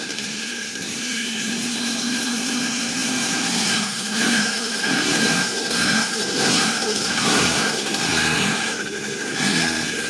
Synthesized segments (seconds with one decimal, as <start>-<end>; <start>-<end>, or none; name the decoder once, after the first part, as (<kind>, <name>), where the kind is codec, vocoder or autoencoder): 0.0-10.1 (codec, SNAC)